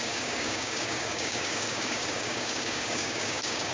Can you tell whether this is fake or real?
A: fake